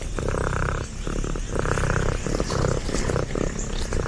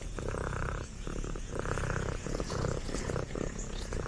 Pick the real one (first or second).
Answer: first